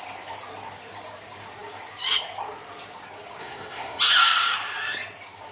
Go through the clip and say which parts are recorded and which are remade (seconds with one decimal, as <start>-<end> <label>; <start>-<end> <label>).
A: 0.0-3.4 recorded; 3.4-4.0 remade; 4.0-5.5 recorded